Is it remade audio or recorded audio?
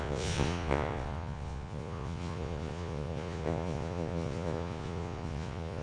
remade